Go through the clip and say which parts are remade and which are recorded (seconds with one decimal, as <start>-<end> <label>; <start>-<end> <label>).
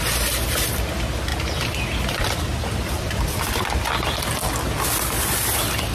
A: 0.0-1.3 recorded; 1.3-3.5 remade; 3.5-5.9 recorded